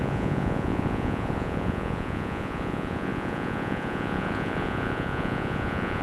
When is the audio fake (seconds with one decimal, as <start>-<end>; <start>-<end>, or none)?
0.0-6.0